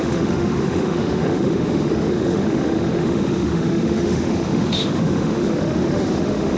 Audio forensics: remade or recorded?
remade